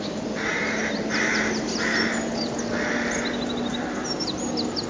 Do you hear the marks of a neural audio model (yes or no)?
no